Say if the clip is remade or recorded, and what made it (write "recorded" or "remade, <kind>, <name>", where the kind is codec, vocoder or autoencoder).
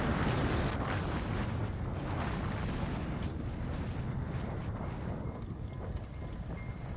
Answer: recorded